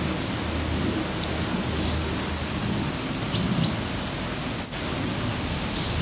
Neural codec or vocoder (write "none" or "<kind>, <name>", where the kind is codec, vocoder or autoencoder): none